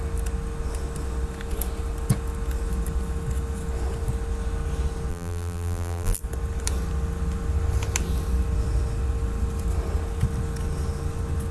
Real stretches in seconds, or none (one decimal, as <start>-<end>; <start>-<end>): 0.0-5.1; 6.2-11.5